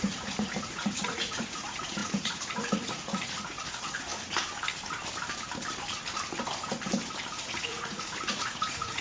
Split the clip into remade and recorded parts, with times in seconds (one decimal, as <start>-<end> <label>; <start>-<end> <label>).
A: 0.0-4.1 remade; 4.1-7.3 recorded; 7.3-9.0 remade